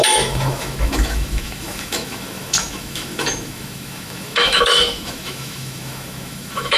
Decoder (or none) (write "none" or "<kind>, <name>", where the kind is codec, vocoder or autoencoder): autoencoder, DAC-VAE